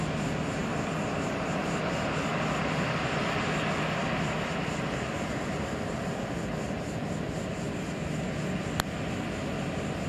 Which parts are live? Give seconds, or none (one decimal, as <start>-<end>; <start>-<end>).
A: 0.0-10.1